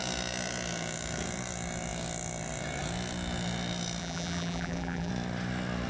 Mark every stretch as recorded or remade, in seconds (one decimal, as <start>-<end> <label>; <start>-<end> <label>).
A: 0.0-4.0 recorded; 4.0-5.1 remade; 5.1-5.9 recorded